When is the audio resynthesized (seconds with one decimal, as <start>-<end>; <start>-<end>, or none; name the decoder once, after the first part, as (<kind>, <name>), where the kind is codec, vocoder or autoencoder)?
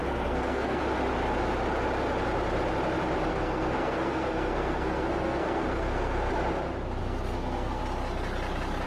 0.0-0.8 (codec, SNAC); 3.3-6.3; 7.0-7.8